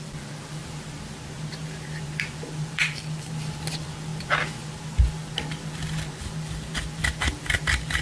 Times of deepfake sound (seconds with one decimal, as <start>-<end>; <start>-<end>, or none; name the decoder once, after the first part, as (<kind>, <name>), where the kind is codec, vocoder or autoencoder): 0.0-0.6 (vocoder, BigVGAN v2); 2.2-4.1; 5.1-8.0